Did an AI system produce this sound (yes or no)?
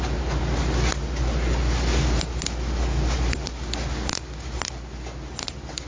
no